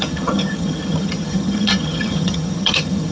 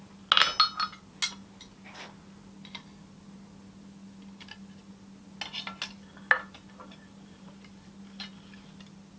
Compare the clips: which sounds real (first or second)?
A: second